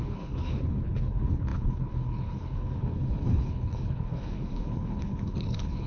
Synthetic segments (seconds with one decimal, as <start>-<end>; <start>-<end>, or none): 0.0-5.9